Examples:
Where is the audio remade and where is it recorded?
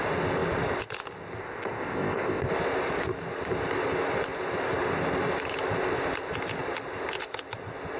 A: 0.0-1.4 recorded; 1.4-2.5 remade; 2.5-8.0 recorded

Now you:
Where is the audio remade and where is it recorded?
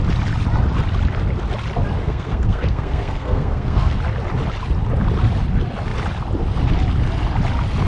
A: 0.0-2.0 recorded; 2.0-4.0 remade; 4.0-7.9 recorded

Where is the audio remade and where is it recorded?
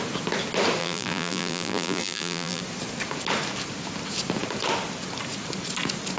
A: 0.0-0.8 recorded; 0.8-2.6 remade; 2.6-6.2 recorded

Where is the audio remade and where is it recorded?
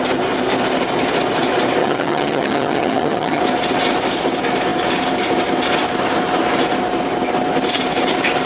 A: 0.0-1.8 recorded; 1.8-3.4 remade; 3.4-8.5 recorded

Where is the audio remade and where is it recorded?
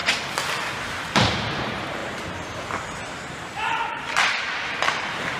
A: 0.0-0.7 recorded; 0.7-5.4 remade